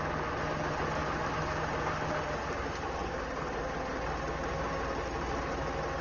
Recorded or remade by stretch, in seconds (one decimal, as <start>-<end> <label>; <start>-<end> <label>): 0.0-1.0 recorded; 1.0-1.6 remade; 1.6-6.0 recorded